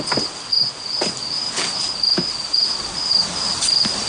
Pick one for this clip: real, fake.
real